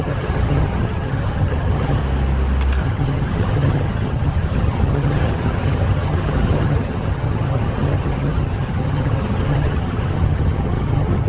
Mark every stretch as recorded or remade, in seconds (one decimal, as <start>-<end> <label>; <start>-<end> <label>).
0.0-2.0 remade; 2.0-2.8 recorded; 2.8-11.3 remade